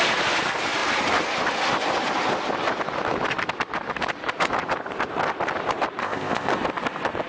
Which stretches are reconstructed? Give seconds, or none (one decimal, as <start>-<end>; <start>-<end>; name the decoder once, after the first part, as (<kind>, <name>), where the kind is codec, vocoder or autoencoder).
6.0-6.5 (codec, ZipCodec)